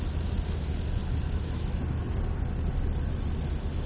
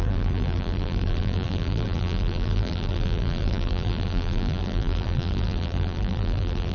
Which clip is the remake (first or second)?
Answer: second